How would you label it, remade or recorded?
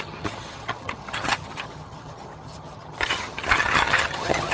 remade